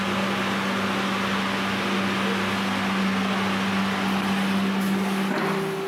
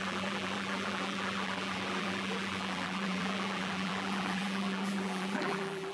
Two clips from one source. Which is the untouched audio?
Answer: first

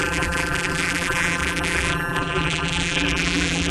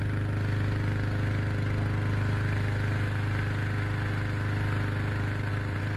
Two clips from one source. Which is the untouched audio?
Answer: second